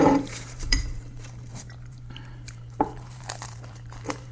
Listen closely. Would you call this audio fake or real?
fake